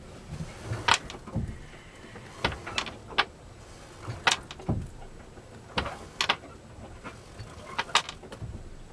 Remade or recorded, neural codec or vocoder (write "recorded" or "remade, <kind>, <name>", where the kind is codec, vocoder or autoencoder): recorded